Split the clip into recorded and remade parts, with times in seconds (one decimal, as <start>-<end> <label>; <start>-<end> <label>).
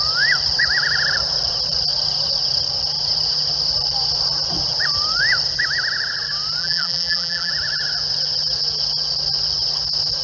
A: 0.0-6.6 recorded; 6.6-7.5 remade; 7.5-10.2 recorded